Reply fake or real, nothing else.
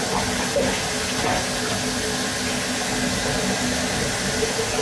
real